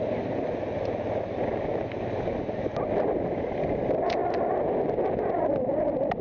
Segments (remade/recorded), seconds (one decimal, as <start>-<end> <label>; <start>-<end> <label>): 0.0-6.2 recorded